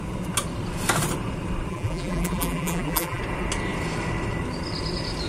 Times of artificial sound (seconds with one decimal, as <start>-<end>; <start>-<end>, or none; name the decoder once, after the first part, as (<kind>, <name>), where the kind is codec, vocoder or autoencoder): 1.7-3.2 (vocoder, BigVGAN v2)